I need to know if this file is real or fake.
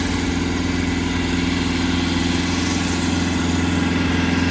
real